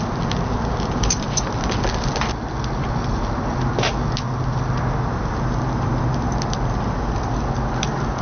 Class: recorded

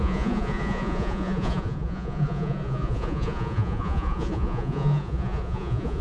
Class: remade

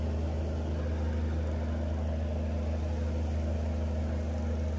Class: recorded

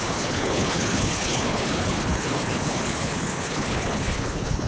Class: remade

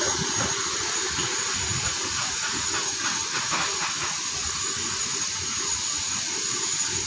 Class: remade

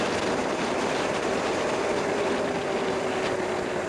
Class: recorded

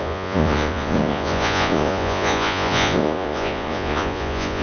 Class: remade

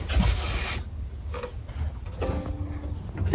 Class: recorded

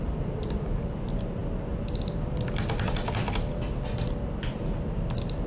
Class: recorded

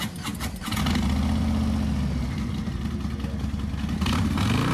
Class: recorded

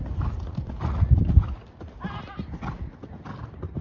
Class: recorded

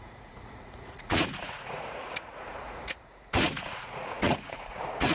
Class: remade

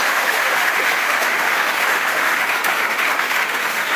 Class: remade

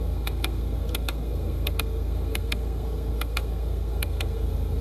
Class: remade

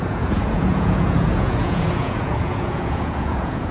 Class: remade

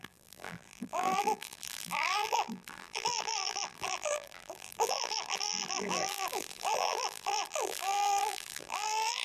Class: remade